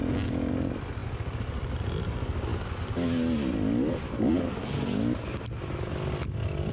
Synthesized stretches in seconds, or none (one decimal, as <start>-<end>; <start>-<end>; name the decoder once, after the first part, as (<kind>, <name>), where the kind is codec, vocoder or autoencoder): none